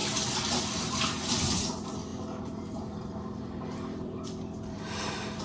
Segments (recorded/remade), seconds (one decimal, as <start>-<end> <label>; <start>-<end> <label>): 0.0-2.1 recorded; 2.1-5.4 remade